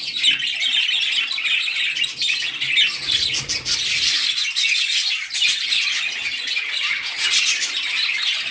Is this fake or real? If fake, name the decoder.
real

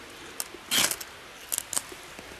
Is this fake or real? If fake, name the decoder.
real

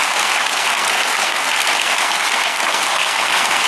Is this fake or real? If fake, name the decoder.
fake, codec, SNAC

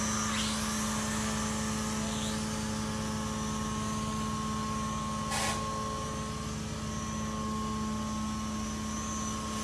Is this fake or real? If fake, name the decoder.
real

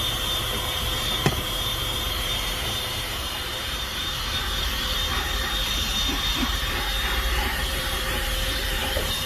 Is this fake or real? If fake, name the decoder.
fake, vocoder, BigVGAN v2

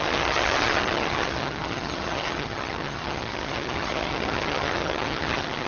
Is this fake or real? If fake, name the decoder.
fake, vocoder, HiFi-GAN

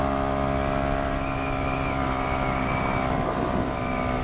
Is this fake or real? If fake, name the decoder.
real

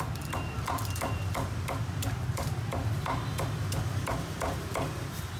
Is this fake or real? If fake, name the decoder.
real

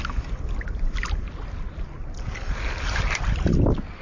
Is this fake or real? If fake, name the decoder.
real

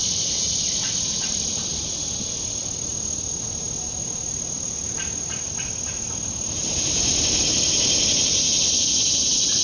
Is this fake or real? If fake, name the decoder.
real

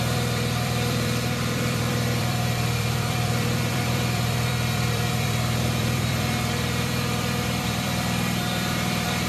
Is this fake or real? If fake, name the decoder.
fake, vocoder, BigVGAN v2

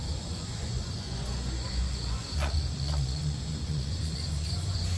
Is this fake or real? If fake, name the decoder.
fake, vocoder, Vocos